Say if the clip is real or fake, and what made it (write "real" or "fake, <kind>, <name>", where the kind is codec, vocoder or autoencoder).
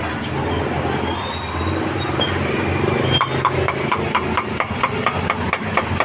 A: real